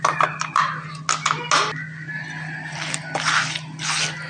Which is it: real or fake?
real